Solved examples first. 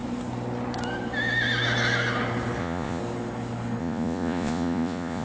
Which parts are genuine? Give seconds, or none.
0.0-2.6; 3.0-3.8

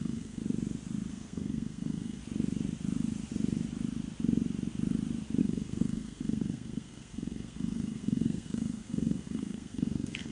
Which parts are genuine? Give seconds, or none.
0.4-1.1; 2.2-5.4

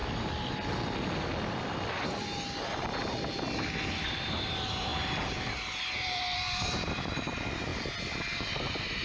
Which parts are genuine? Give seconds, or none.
0.0-4.4; 4.9-5.6; 7.7-8.4

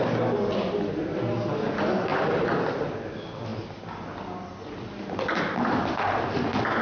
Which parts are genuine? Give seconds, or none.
0.0-6.8